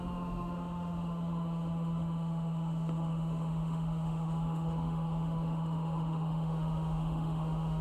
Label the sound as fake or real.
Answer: fake